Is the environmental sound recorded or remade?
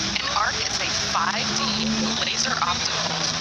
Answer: remade